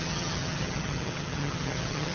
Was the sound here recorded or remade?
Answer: remade